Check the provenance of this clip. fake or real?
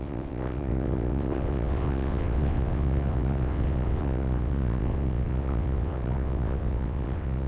fake